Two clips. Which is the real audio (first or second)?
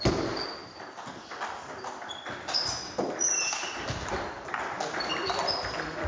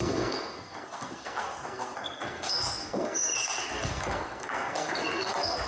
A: first